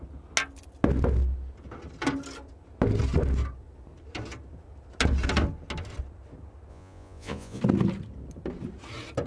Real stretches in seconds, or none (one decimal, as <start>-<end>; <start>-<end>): 0.0-6.7; 7.6-9.3